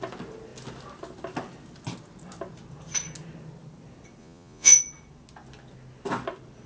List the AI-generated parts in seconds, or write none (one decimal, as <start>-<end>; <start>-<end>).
4.2-4.8